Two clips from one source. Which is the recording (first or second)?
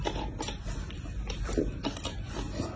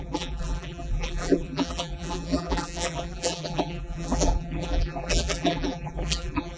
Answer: first